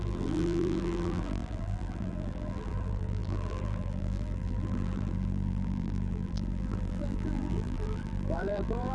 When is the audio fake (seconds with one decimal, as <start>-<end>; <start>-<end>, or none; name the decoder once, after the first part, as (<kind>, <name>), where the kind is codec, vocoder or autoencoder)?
0.0-8.9 (vocoder, BigVGAN v2)